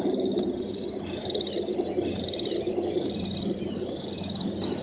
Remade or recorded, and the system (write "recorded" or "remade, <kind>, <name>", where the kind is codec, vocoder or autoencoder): recorded